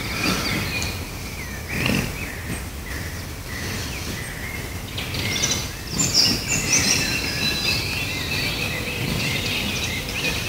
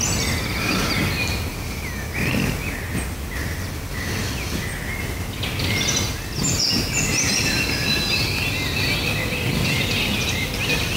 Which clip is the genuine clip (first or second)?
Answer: second